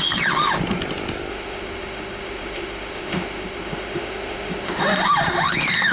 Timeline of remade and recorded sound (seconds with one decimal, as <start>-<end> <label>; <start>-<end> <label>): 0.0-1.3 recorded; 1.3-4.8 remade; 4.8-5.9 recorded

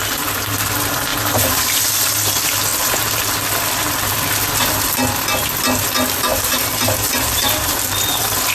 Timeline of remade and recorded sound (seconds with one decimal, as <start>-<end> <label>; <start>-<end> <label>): 0.0-2.7 recorded; 2.7-3.2 remade; 3.2-6.3 recorded; 6.3-7.9 remade; 7.9-8.5 recorded

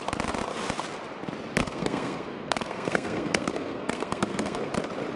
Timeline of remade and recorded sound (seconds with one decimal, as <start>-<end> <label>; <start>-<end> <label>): 0.0-1.6 recorded; 1.6-4.7 remade; 4.7-5.2 recorded